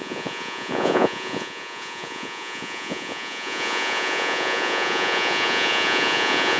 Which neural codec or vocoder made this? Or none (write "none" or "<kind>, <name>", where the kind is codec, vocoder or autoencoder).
vocoder, Vocos